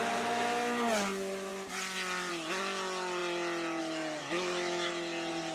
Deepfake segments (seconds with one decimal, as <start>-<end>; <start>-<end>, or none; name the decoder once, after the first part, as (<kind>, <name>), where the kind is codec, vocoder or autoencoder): 4.2-4.9 (autoencoder, DAC-VAE)